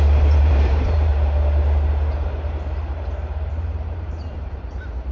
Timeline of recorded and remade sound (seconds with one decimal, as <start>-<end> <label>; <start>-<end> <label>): 0.0-1.1 remade; 1.1-3.5 recorded; 3.5-5.1 remade